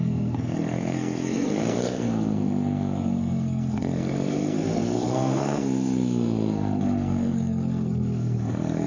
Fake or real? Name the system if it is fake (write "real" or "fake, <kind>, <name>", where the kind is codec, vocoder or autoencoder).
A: fake, codec, SNAC